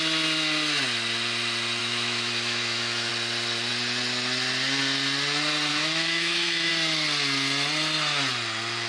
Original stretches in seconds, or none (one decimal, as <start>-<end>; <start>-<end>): 0.0-1.8; 3.1-5.7; 6.7-8.9